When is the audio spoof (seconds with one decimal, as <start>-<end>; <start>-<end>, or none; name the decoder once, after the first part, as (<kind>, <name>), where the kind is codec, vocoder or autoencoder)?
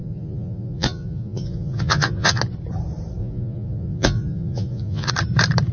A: 0.0-2.4 (vocoder, Vocos); 3.2-5.1